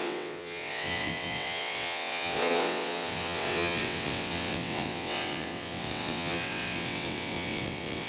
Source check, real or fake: fake